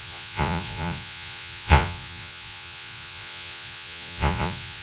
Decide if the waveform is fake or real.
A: fake